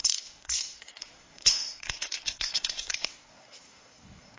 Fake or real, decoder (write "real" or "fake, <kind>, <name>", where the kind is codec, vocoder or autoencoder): fake, codec, SNAC